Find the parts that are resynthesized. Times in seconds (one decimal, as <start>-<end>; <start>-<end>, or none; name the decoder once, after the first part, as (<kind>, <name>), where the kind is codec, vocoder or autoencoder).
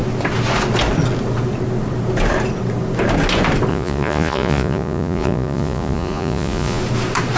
3.7-6.8 (vocoder, Vocos)